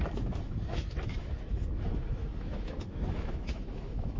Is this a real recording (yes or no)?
no